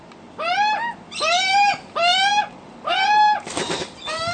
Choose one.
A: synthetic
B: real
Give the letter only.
B